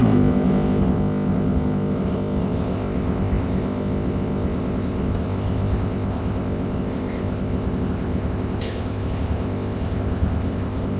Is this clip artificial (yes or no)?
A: yes